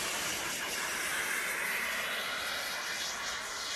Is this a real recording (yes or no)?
yes